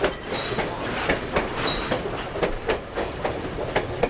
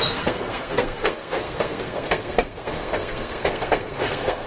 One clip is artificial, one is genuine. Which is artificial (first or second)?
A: second